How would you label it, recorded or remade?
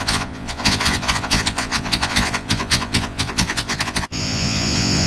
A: remade